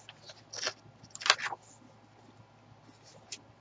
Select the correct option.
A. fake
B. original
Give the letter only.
B